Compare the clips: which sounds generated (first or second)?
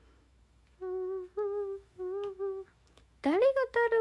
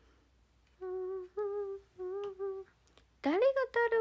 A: first